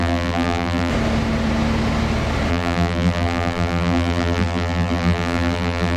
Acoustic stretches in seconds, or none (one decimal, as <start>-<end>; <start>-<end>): 0.9-2.5